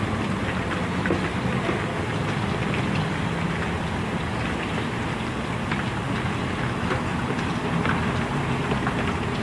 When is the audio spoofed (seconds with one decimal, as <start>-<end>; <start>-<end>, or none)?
7.1-8.5